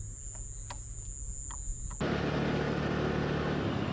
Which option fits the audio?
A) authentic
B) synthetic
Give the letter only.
A